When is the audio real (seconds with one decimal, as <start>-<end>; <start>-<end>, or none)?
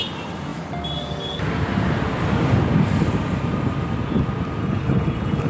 0.0-4.6